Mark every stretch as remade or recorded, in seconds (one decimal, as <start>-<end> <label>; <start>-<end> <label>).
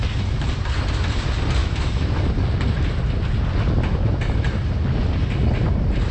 0.0-1.6 recorded; 1.6-2.2 remade; 2.2-6.1 recorded